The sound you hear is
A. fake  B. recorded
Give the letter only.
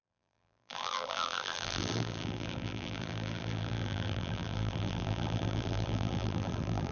A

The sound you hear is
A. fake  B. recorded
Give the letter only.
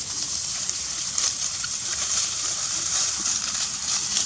A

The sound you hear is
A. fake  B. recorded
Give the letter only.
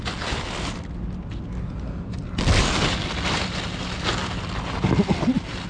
B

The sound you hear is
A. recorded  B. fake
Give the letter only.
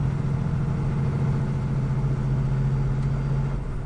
A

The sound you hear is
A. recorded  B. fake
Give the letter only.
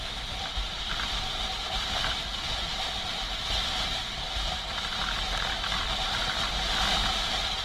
B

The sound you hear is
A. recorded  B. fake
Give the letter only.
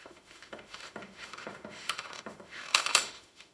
B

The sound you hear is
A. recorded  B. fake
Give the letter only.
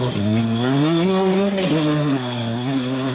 B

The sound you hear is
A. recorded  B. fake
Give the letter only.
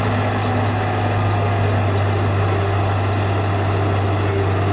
A